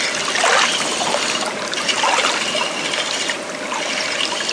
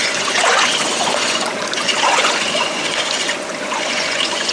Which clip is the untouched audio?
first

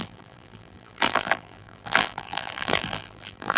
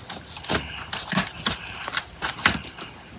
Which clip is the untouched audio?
second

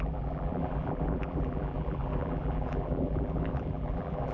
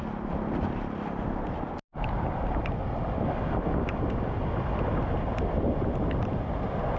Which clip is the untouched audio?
second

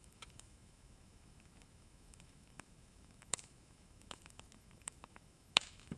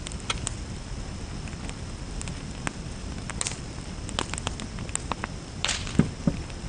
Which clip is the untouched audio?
second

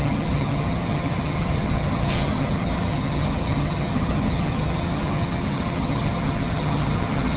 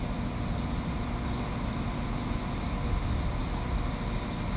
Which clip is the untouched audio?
second